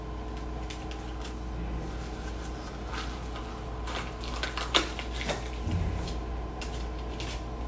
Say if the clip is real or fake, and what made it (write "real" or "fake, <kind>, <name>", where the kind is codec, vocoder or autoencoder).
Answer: real